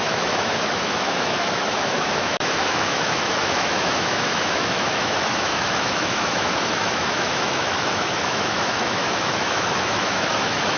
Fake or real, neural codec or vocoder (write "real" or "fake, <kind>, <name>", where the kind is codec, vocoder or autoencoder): fake, autoencoder, DAC-VAE